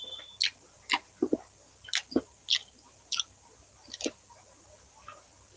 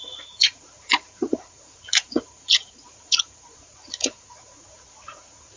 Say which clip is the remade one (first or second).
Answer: second